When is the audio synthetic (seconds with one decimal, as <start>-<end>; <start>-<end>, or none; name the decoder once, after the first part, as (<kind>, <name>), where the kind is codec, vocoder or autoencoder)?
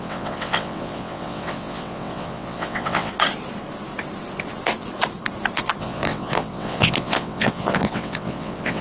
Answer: 0.0-3.1 (vocoder, WaveNeXt); 5.8-8.8